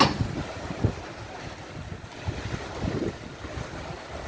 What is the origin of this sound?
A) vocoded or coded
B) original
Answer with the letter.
B